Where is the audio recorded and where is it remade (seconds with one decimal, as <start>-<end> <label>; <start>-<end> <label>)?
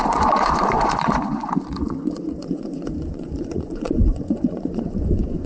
0.0-5.5 remade